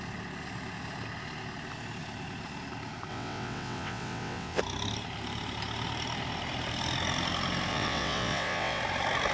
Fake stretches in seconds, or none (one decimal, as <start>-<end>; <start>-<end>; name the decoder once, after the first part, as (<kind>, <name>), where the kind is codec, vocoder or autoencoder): 3.1-4.6 (vocoder, WaveNeXt); 7.7-8.8